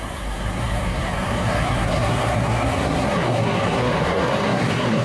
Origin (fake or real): fake